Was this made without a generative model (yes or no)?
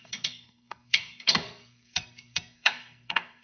no